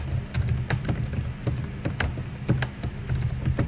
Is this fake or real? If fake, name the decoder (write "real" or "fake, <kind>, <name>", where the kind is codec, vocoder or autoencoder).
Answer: real